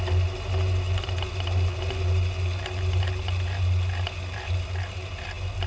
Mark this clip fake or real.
real